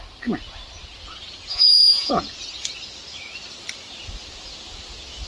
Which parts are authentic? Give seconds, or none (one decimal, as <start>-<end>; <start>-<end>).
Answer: 0.0-1.5; 2.1-5.3